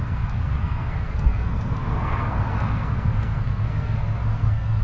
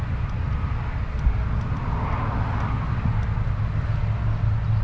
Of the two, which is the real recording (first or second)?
second